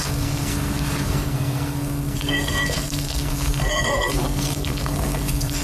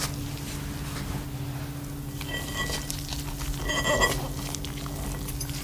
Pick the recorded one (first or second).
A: second